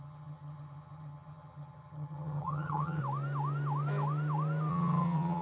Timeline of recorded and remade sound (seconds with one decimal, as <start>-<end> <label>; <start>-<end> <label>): 0.0-3.0 remade; 3.0-4.7 recorded; 4.7-5.4 remade